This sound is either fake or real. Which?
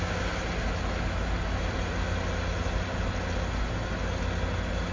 real